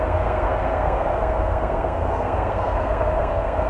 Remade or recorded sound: remade